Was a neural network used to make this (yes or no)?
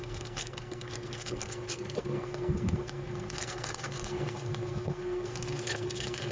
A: yes